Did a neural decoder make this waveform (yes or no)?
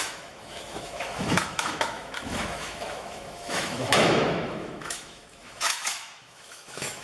yes